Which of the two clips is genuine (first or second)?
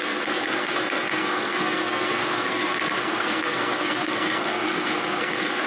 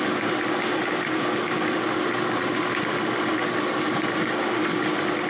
second